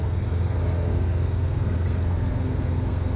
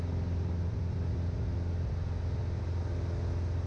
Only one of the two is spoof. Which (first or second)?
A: first